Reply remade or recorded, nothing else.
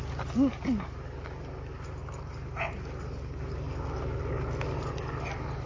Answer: recorded